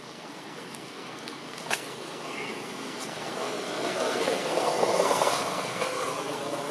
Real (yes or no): no